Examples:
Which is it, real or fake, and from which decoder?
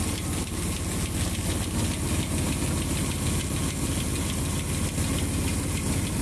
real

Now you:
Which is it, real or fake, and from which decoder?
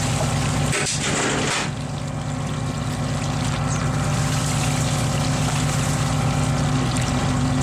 real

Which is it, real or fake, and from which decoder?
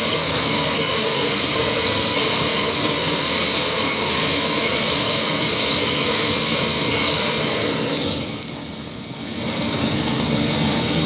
fake, codec, SNAC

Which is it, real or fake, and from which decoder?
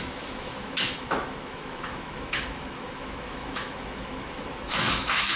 fake, autoencoder, DAC-VAE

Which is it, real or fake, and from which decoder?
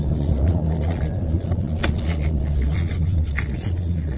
fake, vocoder, Vocos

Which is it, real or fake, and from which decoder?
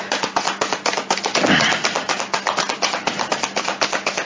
real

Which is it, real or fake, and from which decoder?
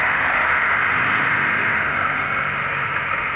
fake, autoencoder, DAC-VAE